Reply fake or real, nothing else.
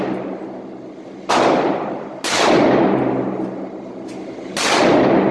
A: real